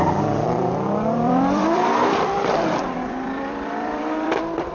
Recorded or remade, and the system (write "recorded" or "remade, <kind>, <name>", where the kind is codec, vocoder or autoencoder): remade, vocoder, BigVGAN v2